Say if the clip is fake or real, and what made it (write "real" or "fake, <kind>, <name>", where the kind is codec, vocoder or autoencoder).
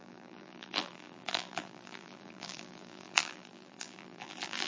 fake, vocoder, BigVGAN v2